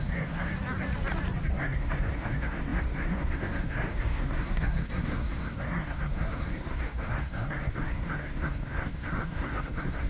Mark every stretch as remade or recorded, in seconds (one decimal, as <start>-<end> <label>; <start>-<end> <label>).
0.0-0.5 remade; 0.5-1.5 recorded; 1.5-10.1 remade